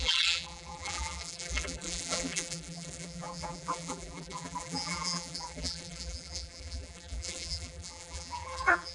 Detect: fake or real fake